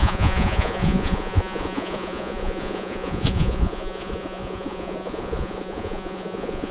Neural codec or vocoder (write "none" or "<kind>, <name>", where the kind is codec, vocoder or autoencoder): vocoder, Vocos